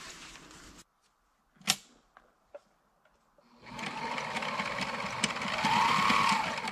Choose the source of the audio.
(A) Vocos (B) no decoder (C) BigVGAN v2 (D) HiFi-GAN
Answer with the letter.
B